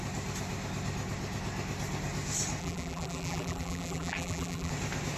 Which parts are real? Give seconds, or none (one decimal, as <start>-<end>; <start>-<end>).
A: 0.0-2.6; 4.7-5.2